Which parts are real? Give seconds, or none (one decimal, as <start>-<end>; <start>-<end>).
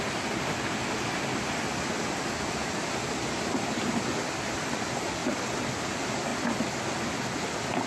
0.0-7.9